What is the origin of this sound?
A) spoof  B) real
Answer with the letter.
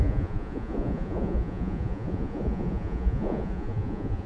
A